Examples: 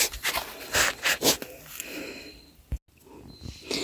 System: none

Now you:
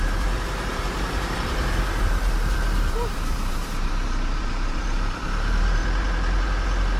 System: vocoder, BigVGAN v2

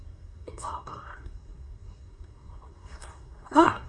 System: codec, SNAC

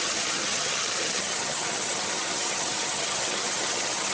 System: vocoder, HiFi-GAN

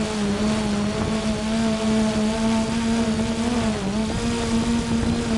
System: none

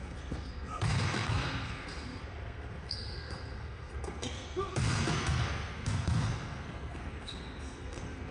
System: codec, SNAC